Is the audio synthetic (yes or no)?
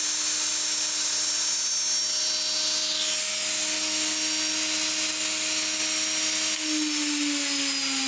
no